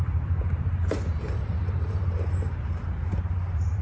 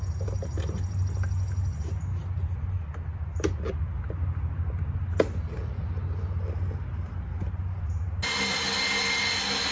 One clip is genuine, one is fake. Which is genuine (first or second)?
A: second